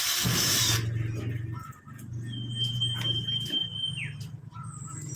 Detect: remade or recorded recorded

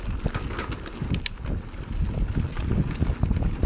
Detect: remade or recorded recorded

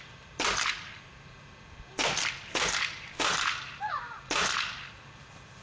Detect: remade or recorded remade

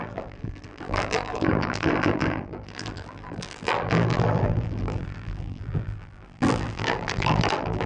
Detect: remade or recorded remade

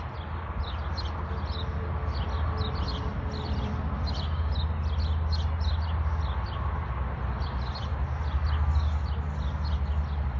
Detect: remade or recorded recorded